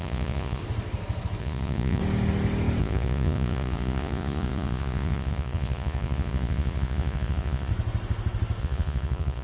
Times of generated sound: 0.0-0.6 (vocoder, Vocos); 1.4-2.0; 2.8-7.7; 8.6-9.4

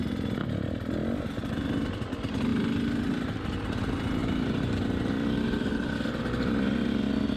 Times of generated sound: 1.0-1.5 (vocoder, BigVGAN v2); 2.5-3.6; 4.2-6.2

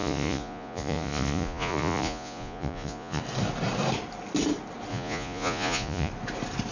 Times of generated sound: 0.0-3.2 (vocoder, Vocos); 4.9-6.1

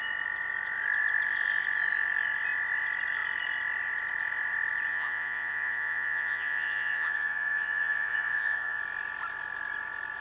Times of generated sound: 4.9-8.8 (vocoder, Vocos)

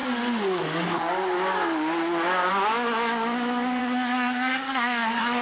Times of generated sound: 3.8-5.4 (codec, SNAC)

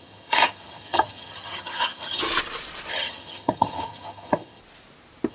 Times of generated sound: 0.0-2.2 (vocoder, HiFi-GAN); 2.9-4.6

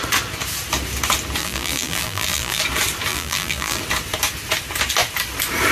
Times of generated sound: 1.4-2.6 (vocoder, BigVGAN v2); 3.1-3.8

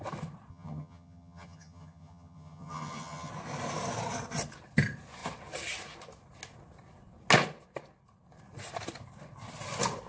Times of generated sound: 0.5-3.3 (vocoder, HiFi-GAN)